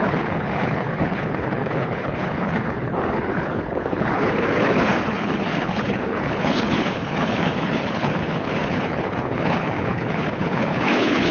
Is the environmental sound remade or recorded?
remade